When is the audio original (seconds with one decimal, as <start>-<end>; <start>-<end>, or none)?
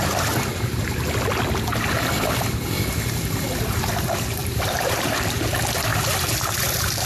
0.0-4.4; 5.4-7.1